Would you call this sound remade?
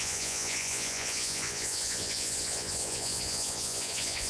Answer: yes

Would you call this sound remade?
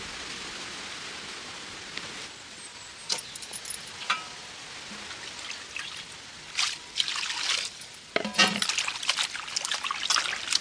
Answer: no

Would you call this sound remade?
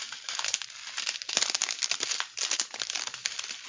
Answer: no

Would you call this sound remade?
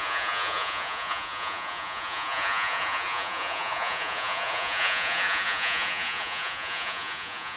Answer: yes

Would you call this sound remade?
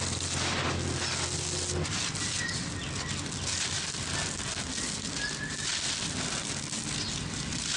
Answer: no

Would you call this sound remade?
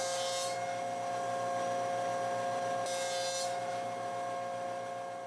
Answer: no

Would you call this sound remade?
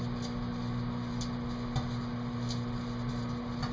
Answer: no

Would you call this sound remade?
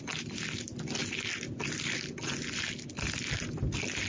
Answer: no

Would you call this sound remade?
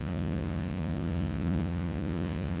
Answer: yes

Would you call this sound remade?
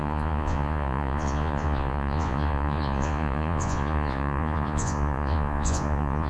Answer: yes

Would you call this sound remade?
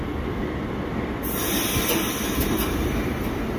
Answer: no